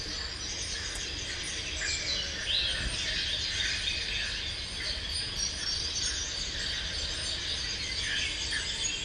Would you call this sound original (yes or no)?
yes